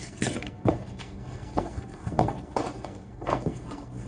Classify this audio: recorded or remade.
remade